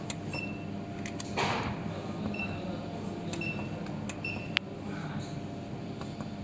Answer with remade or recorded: recorded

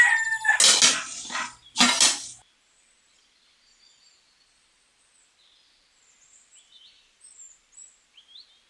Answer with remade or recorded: recorded